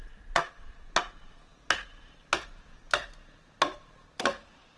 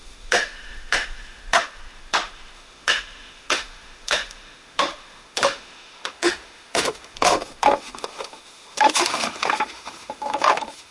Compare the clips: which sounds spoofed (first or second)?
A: second